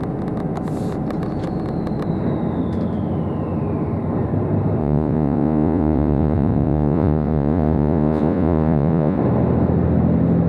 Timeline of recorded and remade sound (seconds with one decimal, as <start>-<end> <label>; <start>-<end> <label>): 0.0-4.8 recorded; 4.8-9.2 remade; 9.2-10.5 recorded